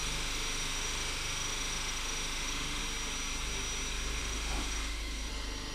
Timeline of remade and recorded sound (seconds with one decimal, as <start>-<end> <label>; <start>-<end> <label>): 0.0-2.8 remade; 2.8-4.2 recorded; 4.2-5.3 remade; 5.3-5.7 recorded

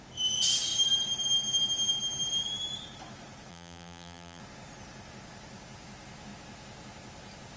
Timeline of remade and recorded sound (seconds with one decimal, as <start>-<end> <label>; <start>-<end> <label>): 0.0-3.5 recorded; 3.5-4.4 remade; 4.4-7.6 recorded

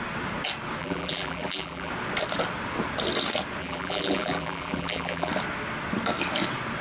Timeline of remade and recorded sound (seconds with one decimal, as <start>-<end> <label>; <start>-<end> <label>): 0.0-0.8 recorded; 0.8-1.9 remade; 1.9-3.6 recorded; 3.6-5.3 remade; 5.3-6.8 recorded

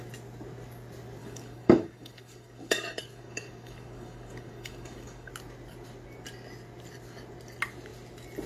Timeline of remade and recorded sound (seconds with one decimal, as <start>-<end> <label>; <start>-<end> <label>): 0.0-1.2 recorded; 1.2-5.3 remade; 5.3-8.5 recorded

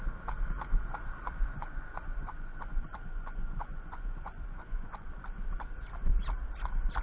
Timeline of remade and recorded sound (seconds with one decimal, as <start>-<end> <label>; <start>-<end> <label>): 0.0-1.5 recorded; 1.5-5.1 remade; 5.1-7.0 recorded

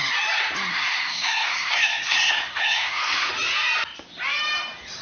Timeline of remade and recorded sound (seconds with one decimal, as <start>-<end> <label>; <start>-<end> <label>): 0.0-0.7 recorded; 0.7-3.3 remade; 3.3-5.0 recorded